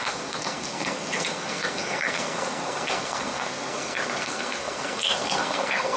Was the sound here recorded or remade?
remade